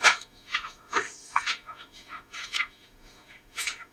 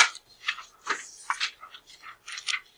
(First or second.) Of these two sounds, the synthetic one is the first